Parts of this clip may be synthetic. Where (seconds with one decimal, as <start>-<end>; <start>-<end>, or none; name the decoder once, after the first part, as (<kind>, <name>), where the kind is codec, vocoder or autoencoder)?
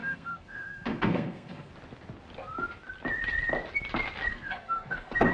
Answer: 0.0-1.7 (codec, SNAC); 4.3-5.3